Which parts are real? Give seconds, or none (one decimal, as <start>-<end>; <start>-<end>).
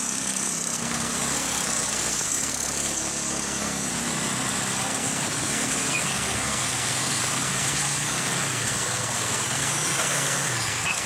3.9-4.7